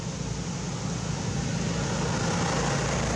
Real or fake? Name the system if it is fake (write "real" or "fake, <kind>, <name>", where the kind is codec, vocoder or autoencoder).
real